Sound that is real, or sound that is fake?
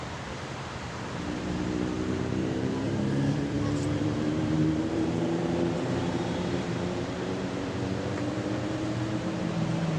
fake